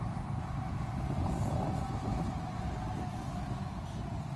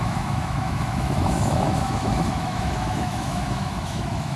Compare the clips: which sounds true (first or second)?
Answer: first